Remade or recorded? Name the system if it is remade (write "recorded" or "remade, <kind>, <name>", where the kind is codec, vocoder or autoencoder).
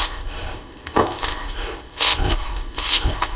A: remade, codec, ZipCodec